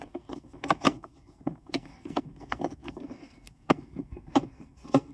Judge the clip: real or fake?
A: fake